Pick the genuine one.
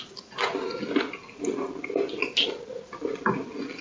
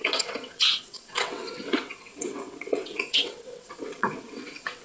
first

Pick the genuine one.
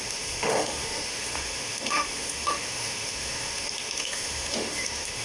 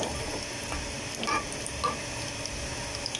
second